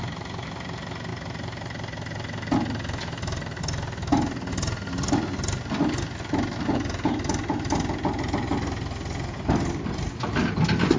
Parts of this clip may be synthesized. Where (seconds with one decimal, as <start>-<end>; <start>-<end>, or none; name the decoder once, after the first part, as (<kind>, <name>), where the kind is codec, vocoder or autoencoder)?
1.1-3.6 (vocoder, BigVGAN v2)